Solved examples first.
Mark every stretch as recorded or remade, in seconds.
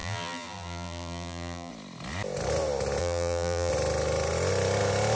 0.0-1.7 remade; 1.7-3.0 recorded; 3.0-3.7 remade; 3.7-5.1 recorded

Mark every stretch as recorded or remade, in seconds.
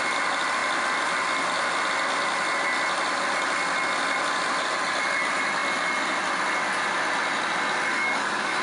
0.0-7.9 recorded; 7.9-8.6 remade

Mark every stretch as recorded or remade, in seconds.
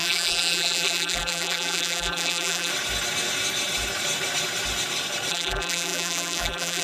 0.0-2.7 remade; 2.7-5.3 recorded; 5.3-6.8 remade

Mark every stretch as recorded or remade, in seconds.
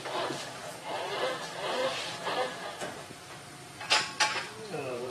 0.0-5.1 remade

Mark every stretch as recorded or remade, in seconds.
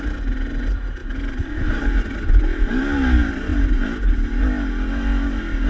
0.0-5.7 recorded